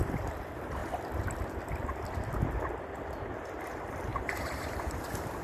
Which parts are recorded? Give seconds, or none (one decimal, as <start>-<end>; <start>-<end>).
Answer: 0.0-4.1; 4.9-5.4